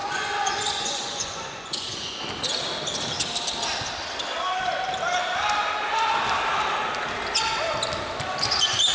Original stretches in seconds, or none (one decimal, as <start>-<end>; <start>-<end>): 2.2-8.9